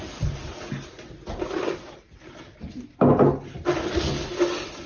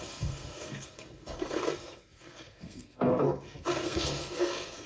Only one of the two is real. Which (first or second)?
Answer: first